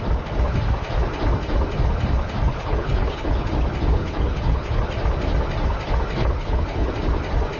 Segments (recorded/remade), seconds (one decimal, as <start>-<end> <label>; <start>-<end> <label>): 0.0-2.5 recorded; 2.5-3.5 remade; 3.5-4.0 recorded; 4.0-4.8 remade; 4.8-6.2 recorded; 6.2-6.9 remade; 6.9-7.6 recorded